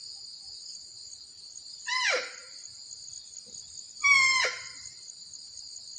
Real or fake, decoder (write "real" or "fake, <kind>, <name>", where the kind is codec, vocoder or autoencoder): real